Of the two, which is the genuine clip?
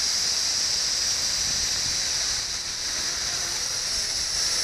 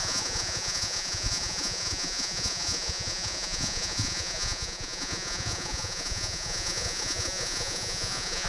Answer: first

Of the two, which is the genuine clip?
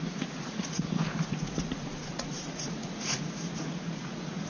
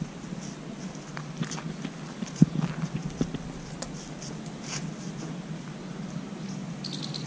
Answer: second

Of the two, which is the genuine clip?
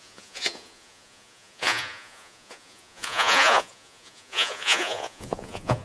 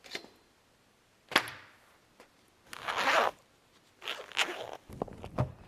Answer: second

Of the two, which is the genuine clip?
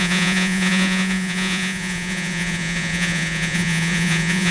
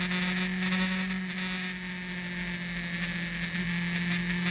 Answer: second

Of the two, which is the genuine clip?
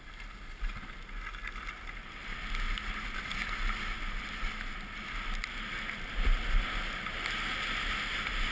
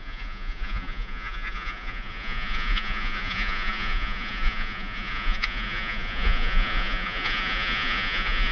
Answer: first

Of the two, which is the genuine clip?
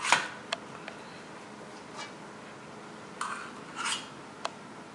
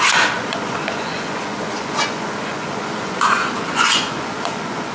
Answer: first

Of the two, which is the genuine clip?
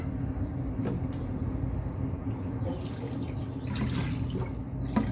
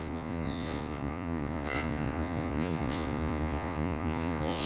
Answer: first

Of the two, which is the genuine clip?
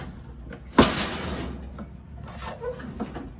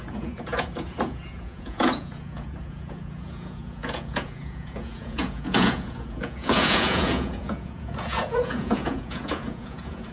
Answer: first